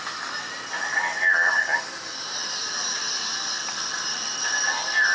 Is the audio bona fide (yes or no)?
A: yes